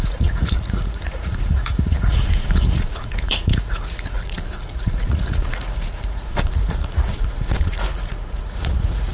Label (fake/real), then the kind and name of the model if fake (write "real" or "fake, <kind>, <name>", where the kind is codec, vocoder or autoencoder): fake, vocoder, Vocos